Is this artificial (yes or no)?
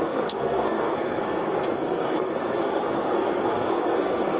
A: yes